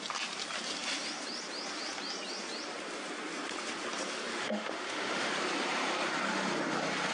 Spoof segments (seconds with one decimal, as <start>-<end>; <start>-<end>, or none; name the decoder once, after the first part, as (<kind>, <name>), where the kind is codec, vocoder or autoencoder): 4.4-5.3 (autoencoder, DAC-VAE)